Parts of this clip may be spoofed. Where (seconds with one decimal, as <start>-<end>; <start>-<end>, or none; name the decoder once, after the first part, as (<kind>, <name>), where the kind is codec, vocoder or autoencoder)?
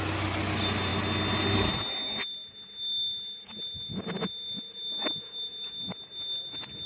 none